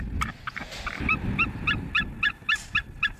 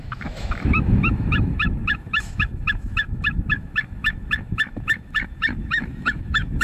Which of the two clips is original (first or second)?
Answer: first